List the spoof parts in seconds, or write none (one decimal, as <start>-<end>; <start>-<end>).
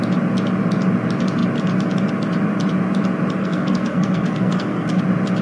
3.4-5.0